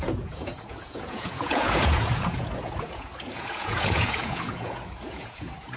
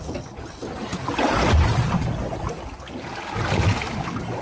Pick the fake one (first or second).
first